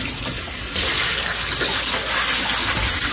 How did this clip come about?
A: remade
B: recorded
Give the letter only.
B